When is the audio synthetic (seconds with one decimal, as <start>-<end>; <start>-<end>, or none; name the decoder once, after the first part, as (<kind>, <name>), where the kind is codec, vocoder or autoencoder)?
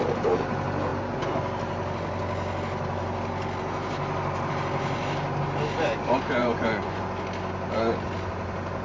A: 6.4-7.0 (vocoder, Vocos)